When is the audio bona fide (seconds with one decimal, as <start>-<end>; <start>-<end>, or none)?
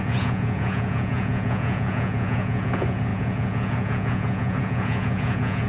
none